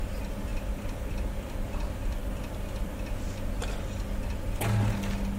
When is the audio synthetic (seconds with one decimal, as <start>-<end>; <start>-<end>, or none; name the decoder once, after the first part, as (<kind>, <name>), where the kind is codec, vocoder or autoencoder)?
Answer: 2.2-3.2 (vocoder, BigVGAN v2)